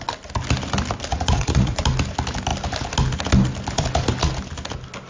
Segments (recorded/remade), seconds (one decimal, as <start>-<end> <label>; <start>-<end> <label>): 0.0-1.1 recorded; 1.1-1.8 remade; 1.8-5.1 recorded